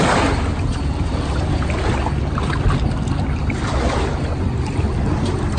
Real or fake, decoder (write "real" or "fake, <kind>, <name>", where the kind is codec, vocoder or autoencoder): real